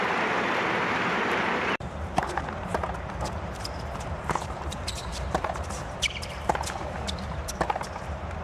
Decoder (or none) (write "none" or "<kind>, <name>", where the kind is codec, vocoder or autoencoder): vocoder, BigVGAN v2